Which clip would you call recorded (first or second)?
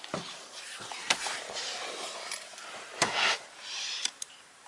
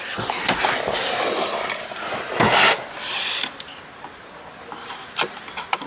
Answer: second